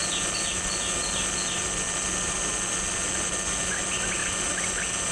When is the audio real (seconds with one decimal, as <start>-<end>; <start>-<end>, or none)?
0.0-5.1